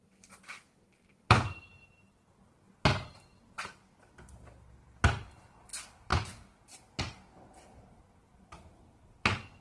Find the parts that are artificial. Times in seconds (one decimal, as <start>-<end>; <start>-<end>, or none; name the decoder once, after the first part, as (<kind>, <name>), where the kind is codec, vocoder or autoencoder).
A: 6.1-6.6 (autoencoder, DAC-VAE)